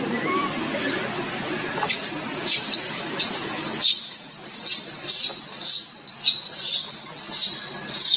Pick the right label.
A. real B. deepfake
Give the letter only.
A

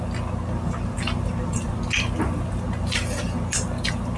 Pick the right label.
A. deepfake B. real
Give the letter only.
A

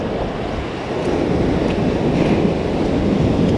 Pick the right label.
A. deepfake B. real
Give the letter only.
B